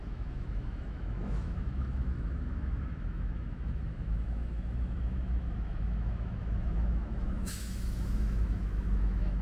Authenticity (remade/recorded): remade